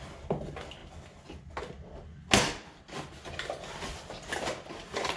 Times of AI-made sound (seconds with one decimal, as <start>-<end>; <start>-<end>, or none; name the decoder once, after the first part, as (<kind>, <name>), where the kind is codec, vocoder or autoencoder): none